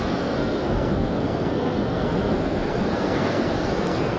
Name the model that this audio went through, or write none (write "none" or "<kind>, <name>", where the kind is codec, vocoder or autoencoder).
codec, SNAC